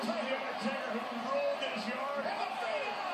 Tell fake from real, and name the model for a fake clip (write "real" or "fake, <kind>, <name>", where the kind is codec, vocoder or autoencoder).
real